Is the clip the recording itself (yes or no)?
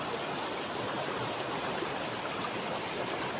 yes